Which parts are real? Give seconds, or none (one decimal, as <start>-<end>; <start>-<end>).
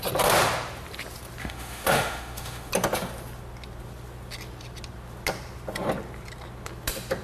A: 0.0-1.4; 2.7-7.2